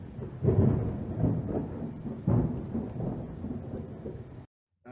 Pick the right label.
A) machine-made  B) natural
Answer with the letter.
B